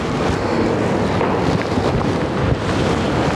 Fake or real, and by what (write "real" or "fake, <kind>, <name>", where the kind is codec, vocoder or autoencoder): real